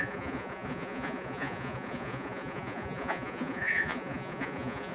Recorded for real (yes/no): no